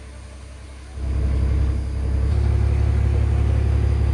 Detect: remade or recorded recorded